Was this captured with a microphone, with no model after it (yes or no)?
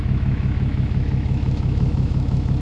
no